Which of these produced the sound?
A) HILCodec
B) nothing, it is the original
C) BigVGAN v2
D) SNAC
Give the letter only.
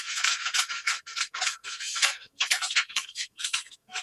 D